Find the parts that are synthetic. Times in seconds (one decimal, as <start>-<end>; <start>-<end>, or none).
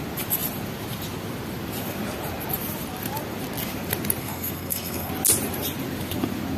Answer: 4.2-5.1